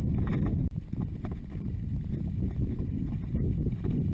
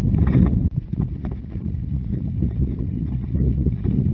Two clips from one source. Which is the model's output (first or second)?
second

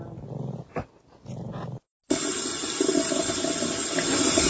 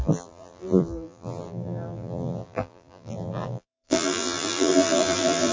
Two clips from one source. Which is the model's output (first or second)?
second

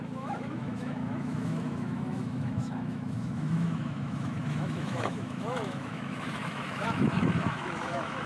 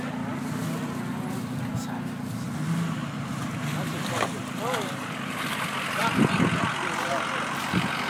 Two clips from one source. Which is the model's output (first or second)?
first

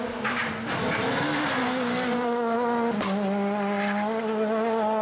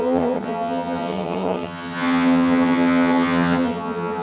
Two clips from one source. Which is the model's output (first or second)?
second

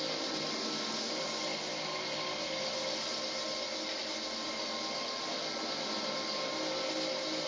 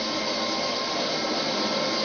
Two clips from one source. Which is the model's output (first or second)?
second